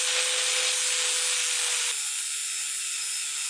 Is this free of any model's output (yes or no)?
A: yes